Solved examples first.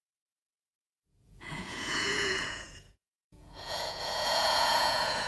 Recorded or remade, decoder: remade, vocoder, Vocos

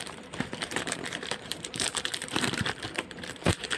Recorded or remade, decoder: remade, vocoder, BigVGAN v2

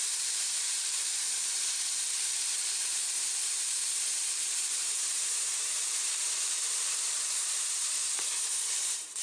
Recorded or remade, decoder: remade, vocoder, BigVGAN v2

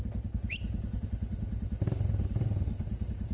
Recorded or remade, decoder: recorded